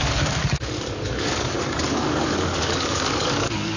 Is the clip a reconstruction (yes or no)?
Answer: yes